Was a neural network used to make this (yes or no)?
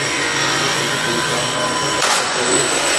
yes